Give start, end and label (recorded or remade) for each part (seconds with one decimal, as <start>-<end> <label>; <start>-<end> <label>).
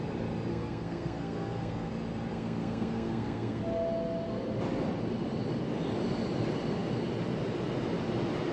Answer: 0.0-0.5 recorded; 0.5-1.9 remade; 1.9-2.3 recorded; 2.3-3.6 remade; 3.6-8.5 recorded